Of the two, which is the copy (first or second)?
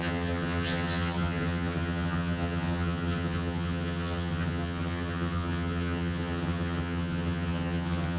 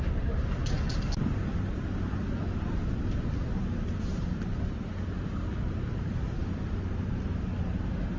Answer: first